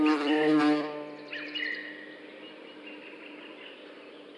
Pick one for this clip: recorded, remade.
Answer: recorded